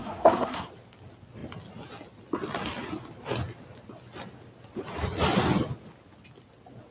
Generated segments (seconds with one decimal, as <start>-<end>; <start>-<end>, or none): 0.0-0.7